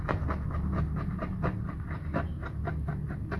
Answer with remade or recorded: recorded